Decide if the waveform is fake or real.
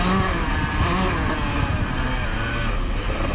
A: real